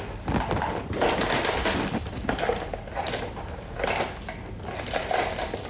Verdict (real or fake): real